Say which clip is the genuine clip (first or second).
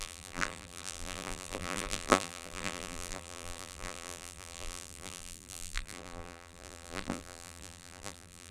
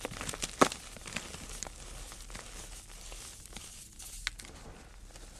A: second